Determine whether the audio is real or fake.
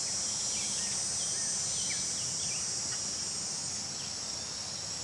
real